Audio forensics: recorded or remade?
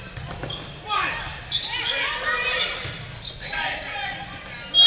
recorded